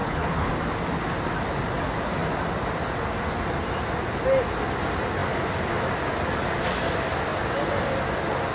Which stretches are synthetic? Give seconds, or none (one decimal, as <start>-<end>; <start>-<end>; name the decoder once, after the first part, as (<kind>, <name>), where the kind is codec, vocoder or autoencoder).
0.0-0.5 (codec, HILCodec)